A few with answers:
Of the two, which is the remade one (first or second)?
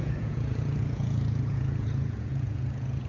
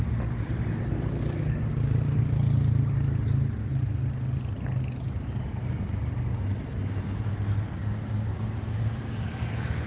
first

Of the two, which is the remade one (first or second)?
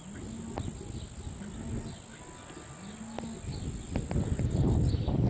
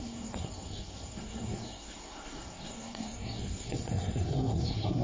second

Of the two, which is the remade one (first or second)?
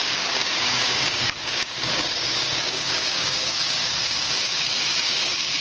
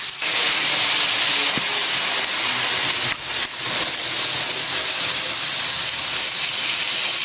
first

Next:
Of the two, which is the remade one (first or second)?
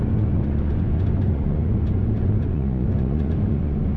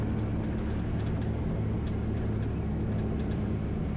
first